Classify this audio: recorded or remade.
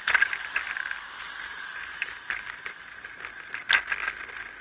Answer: recorded